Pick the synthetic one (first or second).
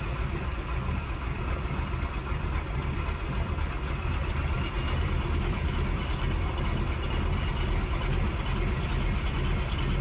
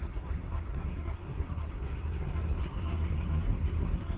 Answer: second